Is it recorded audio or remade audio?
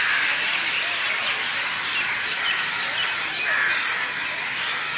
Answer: recorded